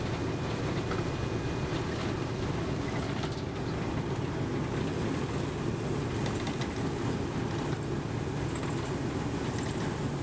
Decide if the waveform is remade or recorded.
recorded